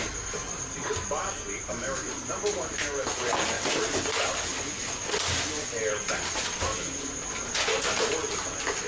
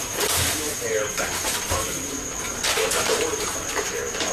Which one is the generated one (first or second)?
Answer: second